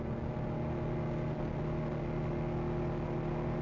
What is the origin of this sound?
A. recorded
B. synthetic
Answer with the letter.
A